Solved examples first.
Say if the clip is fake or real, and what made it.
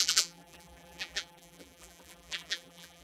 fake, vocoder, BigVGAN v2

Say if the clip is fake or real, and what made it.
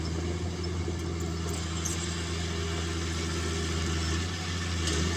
real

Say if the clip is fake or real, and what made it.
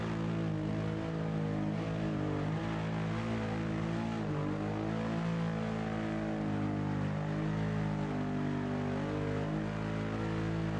real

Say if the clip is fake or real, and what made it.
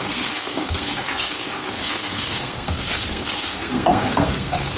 fake, codec, SNAC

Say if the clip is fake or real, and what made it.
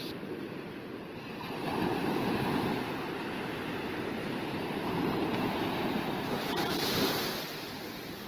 fake, vocoder, BigVGAN v2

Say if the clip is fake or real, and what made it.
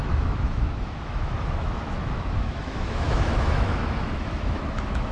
fake, autoencoder, DAC-VAE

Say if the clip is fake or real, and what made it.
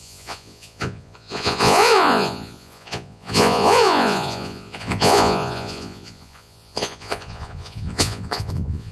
fake, vocoder, Vocos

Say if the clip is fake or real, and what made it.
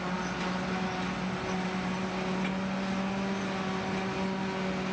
real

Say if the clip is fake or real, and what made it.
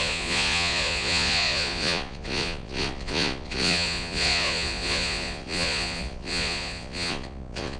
fake, vocoder, Vocos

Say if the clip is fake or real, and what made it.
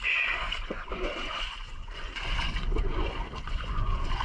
fake, vocoder, Vocos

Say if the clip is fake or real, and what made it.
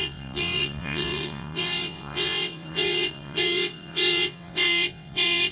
fake, vocoder, WaveNeXt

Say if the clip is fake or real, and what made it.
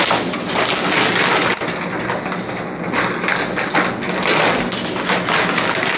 real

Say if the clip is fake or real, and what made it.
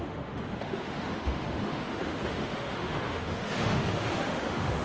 fake, autoencoder, DAC-VAE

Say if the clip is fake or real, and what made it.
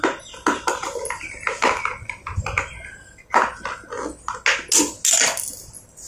real